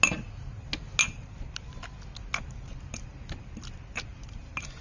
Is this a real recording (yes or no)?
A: yes